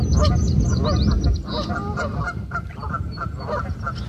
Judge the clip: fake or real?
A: real